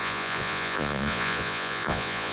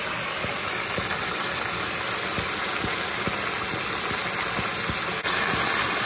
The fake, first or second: first